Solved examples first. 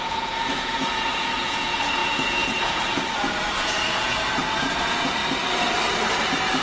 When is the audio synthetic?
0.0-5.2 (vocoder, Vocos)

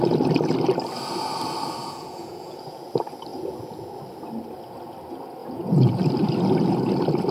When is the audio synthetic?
1.8-2.9 (vocoder, Vocos); 3.3-4.0; 5.4-5.9

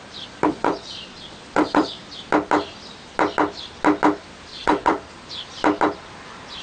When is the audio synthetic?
0.5-2.0 (vocoder, Vocos); 4.5-5.3

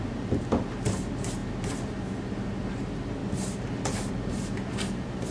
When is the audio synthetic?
none